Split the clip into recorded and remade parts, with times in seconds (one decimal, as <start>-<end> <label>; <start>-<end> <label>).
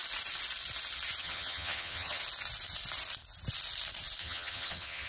0.0-1.2 recorded; 1.2-2.2 remade; 2.2-4.2 recorded; 4.2-5.1 remade